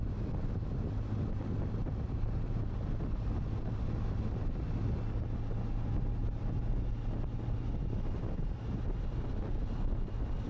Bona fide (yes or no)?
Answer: yes